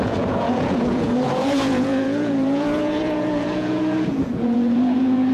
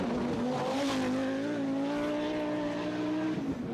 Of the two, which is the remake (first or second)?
first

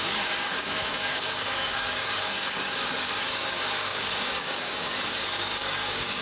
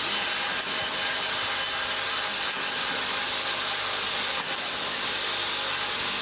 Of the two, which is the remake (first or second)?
first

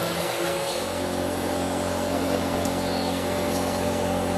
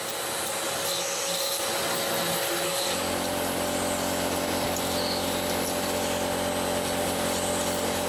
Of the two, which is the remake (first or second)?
first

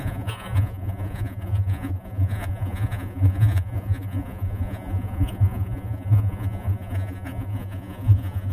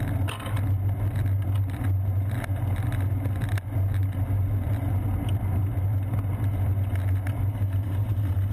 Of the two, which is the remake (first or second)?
first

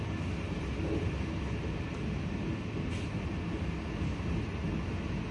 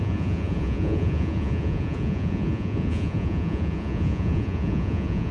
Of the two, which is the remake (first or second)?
second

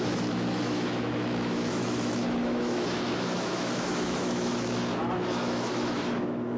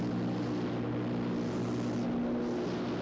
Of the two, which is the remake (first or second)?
first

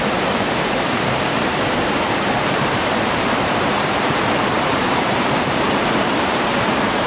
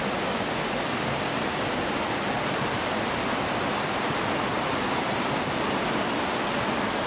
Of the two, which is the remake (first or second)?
first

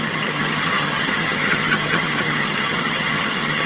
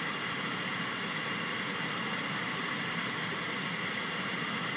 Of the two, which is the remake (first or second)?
first